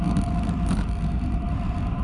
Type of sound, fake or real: real